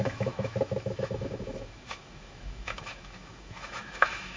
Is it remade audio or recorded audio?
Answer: remade